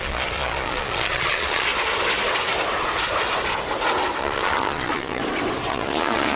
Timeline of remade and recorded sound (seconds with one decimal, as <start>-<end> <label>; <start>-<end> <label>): 0.0-1.7 remade; 1.7-4.2 recorded; 4.2-5.2 remade; 5.2-5.7 recorded; 5.7-6.4 remade